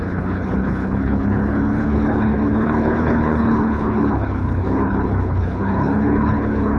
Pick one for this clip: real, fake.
fake